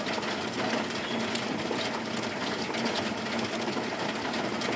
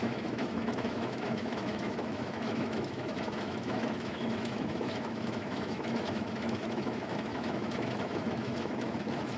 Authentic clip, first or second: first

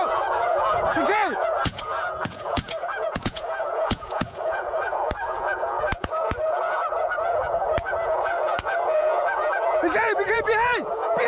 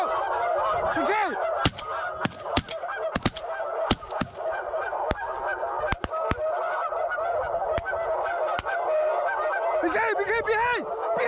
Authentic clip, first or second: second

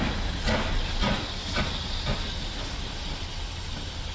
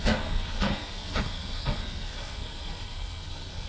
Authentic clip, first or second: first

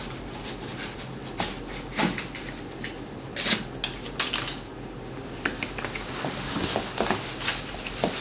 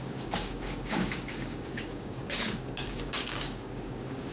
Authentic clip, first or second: first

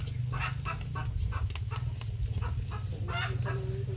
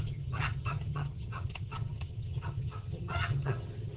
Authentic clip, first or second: first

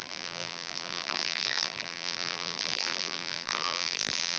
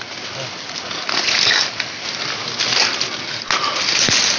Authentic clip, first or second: second